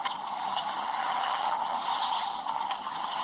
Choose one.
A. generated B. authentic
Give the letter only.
A